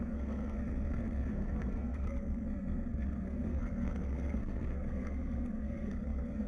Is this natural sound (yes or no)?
no